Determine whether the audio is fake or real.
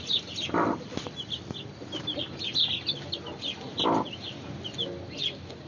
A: real